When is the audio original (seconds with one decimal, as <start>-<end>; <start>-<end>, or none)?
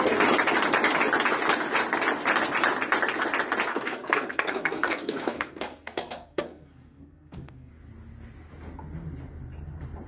0.0-3.7; 7.7-10.1